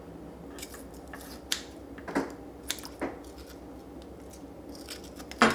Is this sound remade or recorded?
recorded